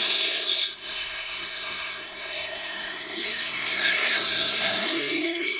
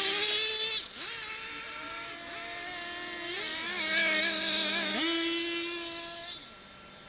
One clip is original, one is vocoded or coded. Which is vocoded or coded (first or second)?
first